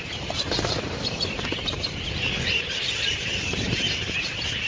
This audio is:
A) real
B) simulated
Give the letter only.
B